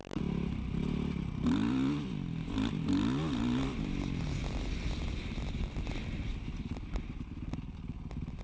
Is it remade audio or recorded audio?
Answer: recorded